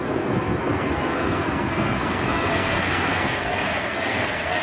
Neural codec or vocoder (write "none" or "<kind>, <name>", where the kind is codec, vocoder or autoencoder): codec, SNAC